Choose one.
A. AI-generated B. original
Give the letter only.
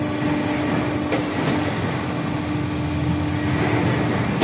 B